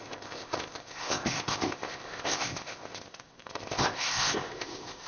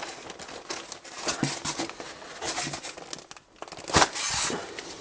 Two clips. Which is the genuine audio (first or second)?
second